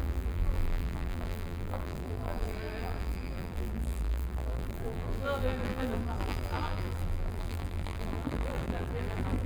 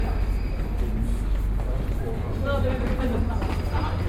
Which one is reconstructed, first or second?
first